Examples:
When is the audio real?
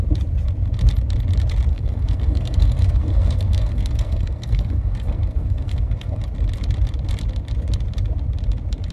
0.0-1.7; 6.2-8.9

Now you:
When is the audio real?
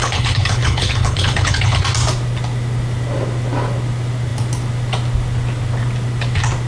1.8-6.7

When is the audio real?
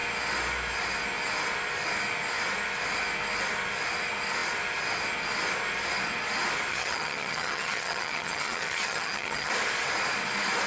0.0-6.7; 9.5-10.7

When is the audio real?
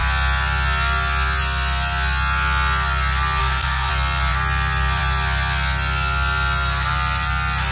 0.0-3.4; 3.9-7.7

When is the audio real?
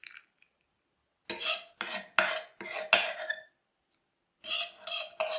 0.0-5.4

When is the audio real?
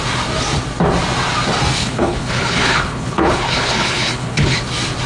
0.0-1.8; 4.6-5.1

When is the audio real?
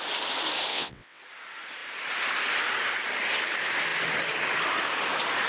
0.0-0.7; 1.2-5.5